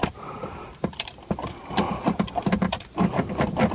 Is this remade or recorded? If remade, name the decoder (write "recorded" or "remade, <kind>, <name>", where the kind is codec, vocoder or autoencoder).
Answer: recorded